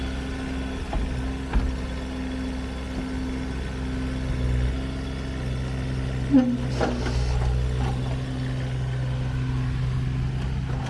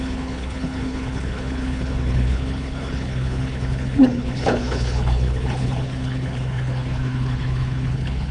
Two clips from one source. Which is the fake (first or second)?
second